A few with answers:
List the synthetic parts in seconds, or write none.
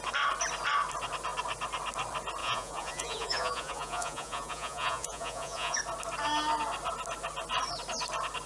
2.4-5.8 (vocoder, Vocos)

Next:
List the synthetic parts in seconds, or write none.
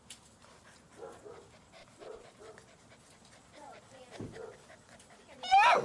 1.8-2.4 (vocoder, BigVGAN v2)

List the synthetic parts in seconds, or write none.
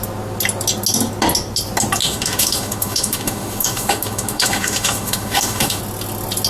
2.0-5.8 (autoencoder, DAC-VAE)